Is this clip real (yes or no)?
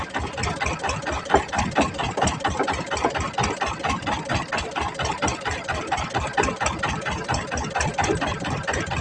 no